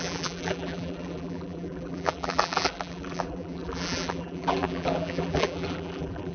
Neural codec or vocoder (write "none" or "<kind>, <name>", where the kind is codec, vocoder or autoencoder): vocoder, BigVGAN v2